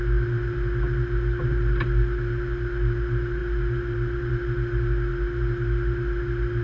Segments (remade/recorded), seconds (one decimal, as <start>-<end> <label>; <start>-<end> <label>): 0.0-6.6 recorded